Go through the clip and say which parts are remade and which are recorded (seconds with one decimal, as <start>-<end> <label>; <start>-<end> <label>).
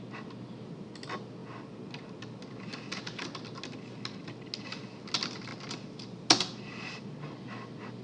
0.0-8.0 recorded